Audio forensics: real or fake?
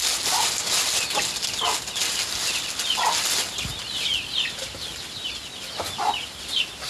real